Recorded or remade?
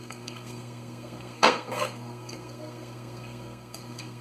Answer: remade